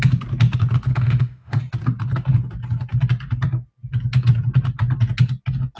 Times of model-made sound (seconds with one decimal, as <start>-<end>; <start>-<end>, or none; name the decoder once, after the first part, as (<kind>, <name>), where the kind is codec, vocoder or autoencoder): 0.9-1.6 (autoencoder, DAC-VAE)